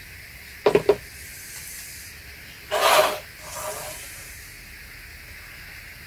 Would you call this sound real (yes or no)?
yes